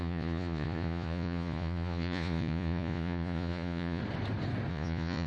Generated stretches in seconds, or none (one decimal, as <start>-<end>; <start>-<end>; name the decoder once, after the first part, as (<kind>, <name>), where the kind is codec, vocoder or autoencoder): 0.0-4.0 (vocoder, Vocos); 4.7-5.3

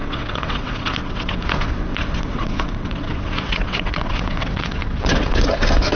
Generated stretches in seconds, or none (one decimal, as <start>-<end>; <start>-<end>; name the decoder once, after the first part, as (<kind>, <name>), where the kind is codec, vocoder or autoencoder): 0.0-1.4 (vocoder, WaveNeXt); 1.9-5.5

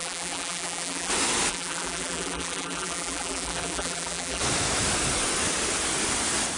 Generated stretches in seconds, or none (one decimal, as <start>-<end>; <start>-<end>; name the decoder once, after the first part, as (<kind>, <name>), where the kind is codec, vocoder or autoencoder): 0.0-1.1 (vocoder, BigVGAN v2); 1.5-4.4

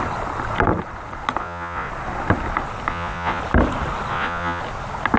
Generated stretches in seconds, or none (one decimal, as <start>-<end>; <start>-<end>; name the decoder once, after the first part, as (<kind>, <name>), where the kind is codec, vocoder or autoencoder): 1.4-1.9 (vocoder, Vocos); 2.9-3.4; 4.1-4.6

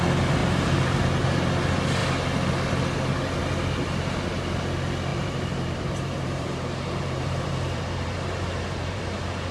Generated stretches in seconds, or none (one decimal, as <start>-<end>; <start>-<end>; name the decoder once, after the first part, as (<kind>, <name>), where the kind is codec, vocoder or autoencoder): 0.4-1.2 (vocoder, BigVGAN v2); 5.1-9.0

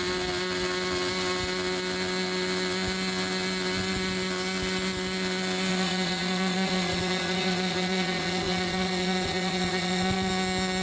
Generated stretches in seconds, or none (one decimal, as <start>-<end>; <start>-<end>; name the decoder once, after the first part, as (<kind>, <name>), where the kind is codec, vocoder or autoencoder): 5.7-10.3 (vocoder, Vocos)

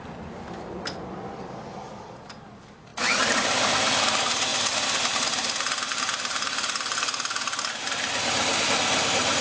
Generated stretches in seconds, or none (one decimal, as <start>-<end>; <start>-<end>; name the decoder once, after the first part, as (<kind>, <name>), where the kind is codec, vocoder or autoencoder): none

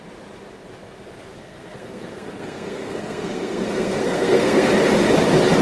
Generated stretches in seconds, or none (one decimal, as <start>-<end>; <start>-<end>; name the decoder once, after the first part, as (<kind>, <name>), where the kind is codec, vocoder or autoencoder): 1.3-4.7 (codec, SNAC)